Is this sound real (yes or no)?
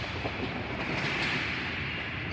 no